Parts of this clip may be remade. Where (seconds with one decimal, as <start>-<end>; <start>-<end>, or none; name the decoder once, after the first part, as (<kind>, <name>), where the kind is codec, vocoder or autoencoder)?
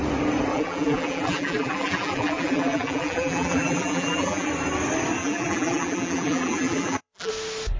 0.5-4.5 (vocoder, BigVGAN v2); 5.2-7.3